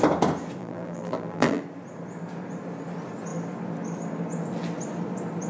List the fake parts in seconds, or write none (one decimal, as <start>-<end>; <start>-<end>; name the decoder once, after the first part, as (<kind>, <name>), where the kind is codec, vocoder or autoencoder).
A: 0.6-1.6 (vocoder, BigVGAN v2)